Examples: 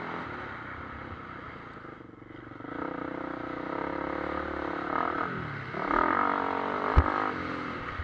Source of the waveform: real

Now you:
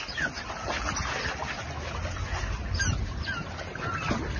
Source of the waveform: real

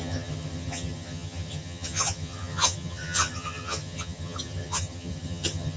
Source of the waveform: fake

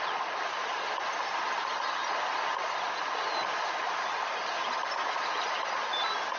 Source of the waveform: real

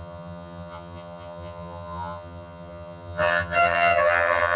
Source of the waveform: fake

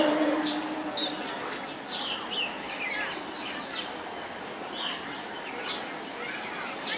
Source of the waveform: real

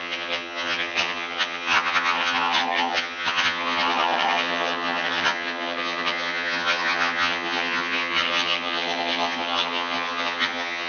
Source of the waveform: fake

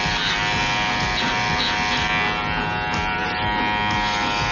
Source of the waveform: real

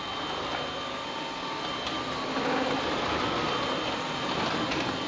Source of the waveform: real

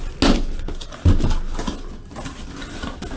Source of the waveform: real